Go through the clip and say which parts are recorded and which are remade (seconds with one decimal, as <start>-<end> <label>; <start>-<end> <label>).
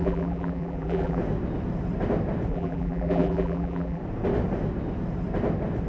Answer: 0.0-1.2 remade; 1.2-2.5 recorded; 2.5-4.0 remade; 4.0-5.9 recorded